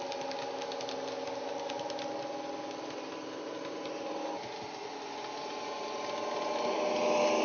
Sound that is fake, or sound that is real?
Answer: real